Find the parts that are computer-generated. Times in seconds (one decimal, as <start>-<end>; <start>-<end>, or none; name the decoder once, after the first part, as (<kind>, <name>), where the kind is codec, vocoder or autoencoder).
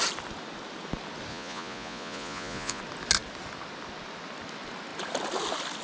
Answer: 1.3-2.8 (vocoder, Vocos)